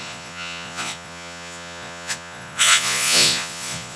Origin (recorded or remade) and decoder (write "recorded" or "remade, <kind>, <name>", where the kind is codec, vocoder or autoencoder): remade, vocoder, Vocos